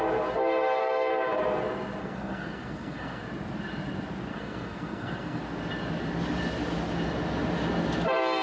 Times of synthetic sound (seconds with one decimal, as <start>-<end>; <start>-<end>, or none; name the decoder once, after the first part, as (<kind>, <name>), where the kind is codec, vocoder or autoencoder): 0.8-1.4 (codec, SNAC); 2.0-3.2; 4.3-5.4

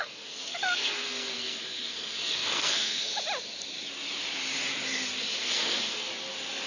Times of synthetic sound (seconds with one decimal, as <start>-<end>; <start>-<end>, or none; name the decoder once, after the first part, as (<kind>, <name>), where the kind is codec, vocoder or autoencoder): 0.0-3.1 (codec, SNAC); 5.4-6.1

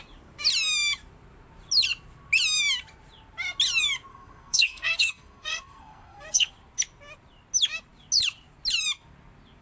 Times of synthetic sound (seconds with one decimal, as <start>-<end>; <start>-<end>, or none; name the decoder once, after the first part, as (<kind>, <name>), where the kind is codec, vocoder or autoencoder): 4.1-6.5 (codec, SNAC)

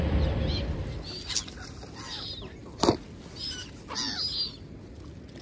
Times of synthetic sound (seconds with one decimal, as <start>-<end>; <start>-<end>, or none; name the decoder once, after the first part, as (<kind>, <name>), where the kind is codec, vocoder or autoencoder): none

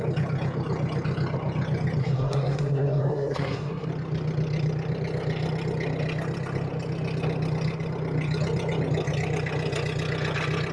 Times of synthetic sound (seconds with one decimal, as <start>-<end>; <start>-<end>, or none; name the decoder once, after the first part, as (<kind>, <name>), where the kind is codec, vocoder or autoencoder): 2.0-3.9 (codec, SNAC)

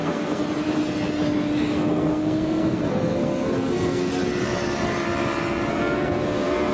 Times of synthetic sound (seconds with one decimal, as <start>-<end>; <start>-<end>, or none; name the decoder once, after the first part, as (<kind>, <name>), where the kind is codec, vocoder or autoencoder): 0.0-0.4 (codec, SNAC); 1.7-4.1; 5.7-6.7